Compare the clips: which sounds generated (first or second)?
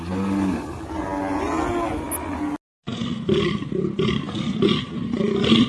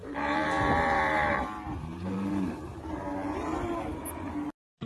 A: second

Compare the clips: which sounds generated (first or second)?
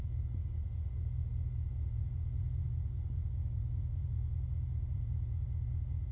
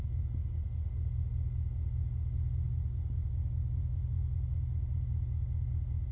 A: first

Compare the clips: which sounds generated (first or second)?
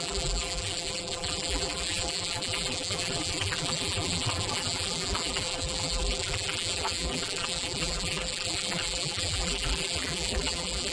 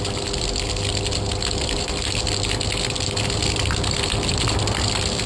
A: first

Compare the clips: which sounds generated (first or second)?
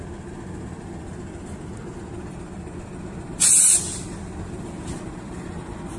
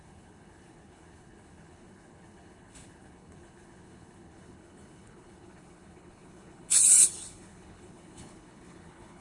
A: second